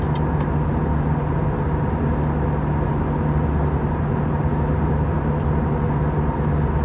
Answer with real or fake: real